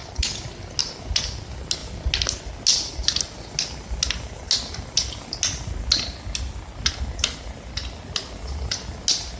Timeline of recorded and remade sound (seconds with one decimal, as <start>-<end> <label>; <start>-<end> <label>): 0.0-9.4 recorded